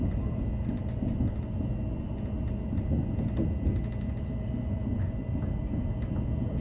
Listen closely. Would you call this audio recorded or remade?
recorded